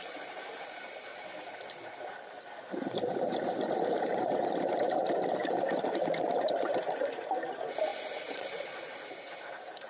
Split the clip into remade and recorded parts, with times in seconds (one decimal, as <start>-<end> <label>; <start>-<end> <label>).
0.0-1.1 remade; 1.1-2.7 recorded; 2.7-4.1 remade; 4.1-5.3 recorded; 5.3-9.9 remade